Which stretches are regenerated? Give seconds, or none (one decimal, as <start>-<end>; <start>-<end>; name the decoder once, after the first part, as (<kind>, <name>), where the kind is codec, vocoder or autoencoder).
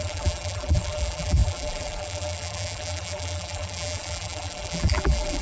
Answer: 0.0-5.4 (vocoder, BigVGAN v2)